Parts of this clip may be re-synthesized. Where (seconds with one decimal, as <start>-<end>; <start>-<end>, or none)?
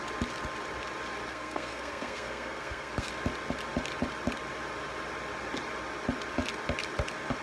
1.3-3.1